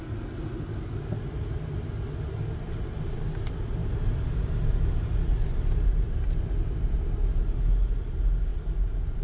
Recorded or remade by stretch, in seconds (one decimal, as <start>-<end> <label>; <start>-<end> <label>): 0.0-3.8 recorded; 3.8-4.9 remade; 4.9-9.2 recorded